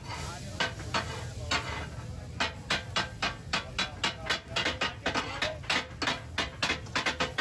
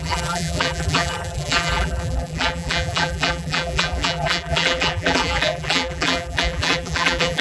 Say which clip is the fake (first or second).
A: second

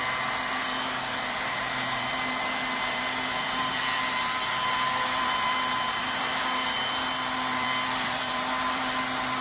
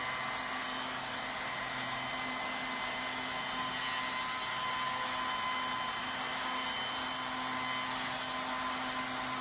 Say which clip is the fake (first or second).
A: first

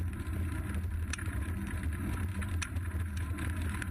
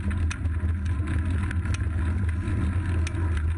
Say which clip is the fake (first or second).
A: first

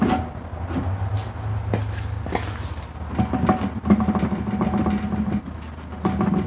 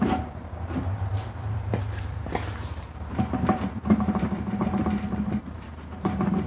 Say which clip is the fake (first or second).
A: second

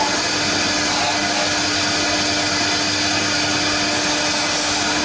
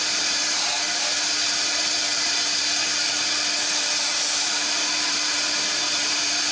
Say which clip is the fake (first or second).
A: second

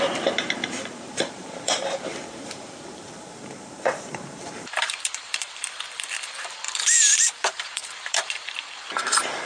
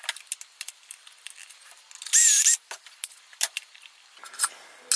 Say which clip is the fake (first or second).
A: first